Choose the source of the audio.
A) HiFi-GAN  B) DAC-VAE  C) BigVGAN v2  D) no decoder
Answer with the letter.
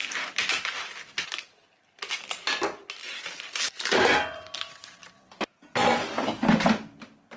D